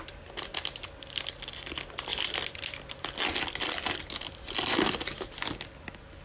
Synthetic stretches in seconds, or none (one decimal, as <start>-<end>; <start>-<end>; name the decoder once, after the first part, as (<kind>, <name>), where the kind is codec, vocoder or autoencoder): 2.1-3.2 (vocoder, BigVGAN v2)